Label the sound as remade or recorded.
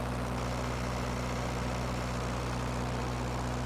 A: recorded